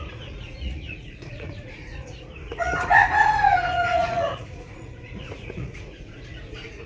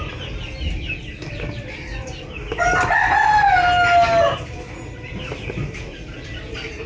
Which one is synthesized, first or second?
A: first